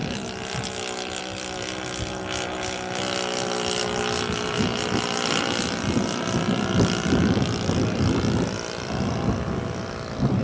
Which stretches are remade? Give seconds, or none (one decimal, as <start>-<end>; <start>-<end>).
none